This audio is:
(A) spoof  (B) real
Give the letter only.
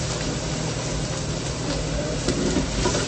B